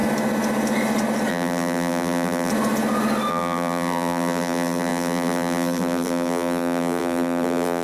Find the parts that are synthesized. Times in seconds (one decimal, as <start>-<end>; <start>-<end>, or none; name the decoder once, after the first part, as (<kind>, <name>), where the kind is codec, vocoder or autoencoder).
1.3-2.5 (vocoder, BigVGAN v2); 3.3-7.8